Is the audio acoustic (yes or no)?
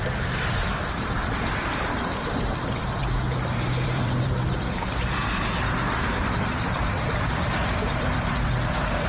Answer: no